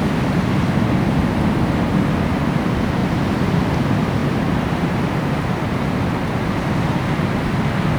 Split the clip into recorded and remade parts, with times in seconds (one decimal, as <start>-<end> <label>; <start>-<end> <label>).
0.0-3.0 recorded; 3.0-3.6 remade; 3.6-4.2 recorded; 4.2-5.5 remade; 5.5-8.0 recorded